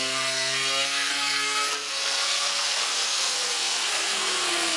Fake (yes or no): yes